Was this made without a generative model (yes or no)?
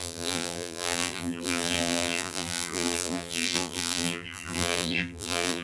no